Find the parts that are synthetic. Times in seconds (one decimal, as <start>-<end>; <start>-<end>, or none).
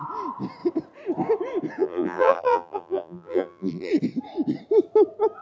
1.8-3.9